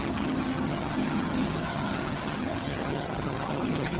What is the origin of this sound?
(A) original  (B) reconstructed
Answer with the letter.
B